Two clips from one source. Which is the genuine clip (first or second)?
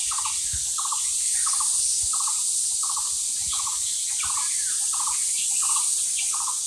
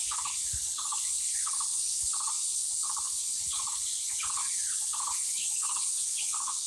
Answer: first